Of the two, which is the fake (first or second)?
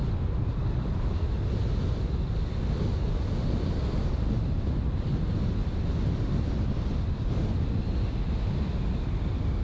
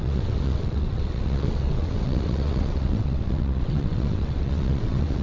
second